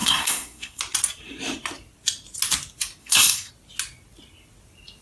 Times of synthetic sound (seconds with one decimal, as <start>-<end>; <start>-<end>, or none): 0.0-0.8; 3.0-3.5